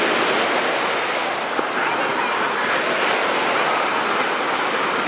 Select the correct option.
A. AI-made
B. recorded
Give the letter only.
B